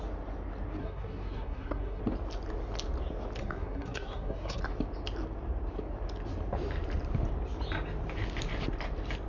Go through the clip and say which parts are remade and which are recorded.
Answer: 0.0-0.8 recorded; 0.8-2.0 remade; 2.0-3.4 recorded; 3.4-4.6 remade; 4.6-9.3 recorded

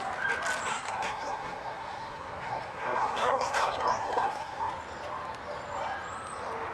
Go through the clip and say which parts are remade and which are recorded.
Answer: 0.0-0.7 recorded; 0.7-4.7 remade; 4.7-6.7 recorded

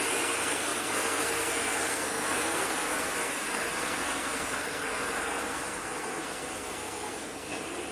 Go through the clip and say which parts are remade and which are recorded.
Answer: 0.0-7.9 remade

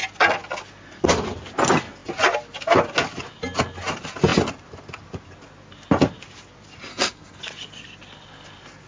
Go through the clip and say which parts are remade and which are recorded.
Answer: 0.0-6.9 recorded; 6.9-7.4 remade; 7.4-8.9 recorded

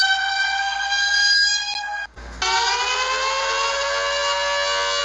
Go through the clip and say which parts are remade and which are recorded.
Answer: 0.0-0.6 recorded; 0.6-1.5 remade; 1.5-5.0 recorded

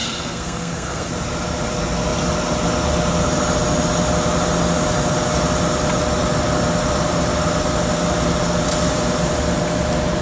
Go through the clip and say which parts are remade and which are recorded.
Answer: 0.0-1.1 remade; 1.1-10.2 recorded